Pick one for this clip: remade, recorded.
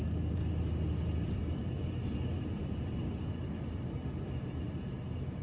recorded